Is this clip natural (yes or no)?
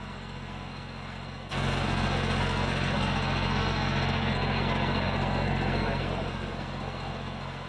no